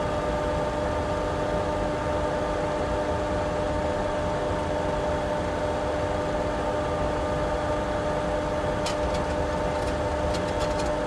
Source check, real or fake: real